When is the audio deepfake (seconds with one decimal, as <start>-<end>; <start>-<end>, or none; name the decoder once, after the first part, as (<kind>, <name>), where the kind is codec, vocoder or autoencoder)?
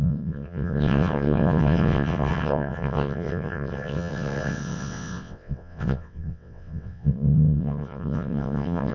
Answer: 0.0-8.9 (vocoder, WaveNeXt)